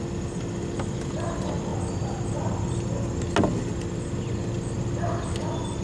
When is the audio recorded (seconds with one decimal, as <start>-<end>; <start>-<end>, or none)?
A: 0.0-5.8